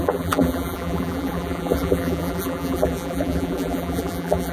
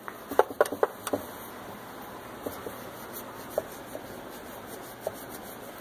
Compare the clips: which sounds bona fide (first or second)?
second